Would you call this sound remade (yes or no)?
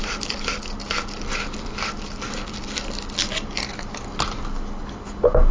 no